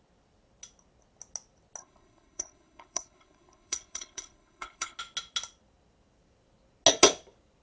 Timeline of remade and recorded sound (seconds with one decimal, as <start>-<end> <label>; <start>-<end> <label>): 0.0-1.8 recorded; 1.8-5.0 remade; 5.0-7.6 recorded